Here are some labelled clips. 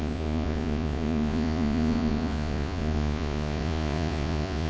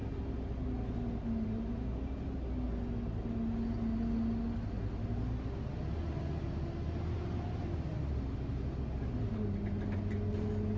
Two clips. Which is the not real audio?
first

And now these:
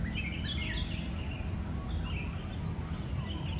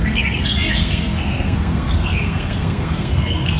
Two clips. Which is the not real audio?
second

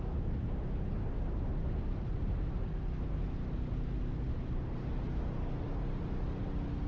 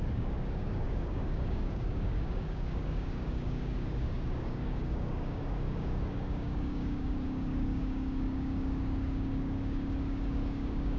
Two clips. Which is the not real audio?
second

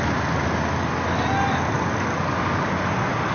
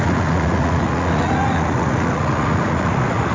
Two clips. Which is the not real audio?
second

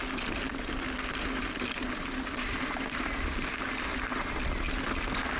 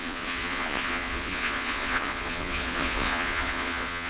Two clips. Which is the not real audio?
second